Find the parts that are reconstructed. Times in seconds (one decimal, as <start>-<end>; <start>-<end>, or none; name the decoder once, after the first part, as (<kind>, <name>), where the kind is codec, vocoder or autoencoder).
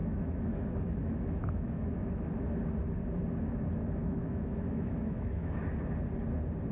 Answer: 0.0-2.3 (autoencoder, DAC-VAE); 4.0-5.6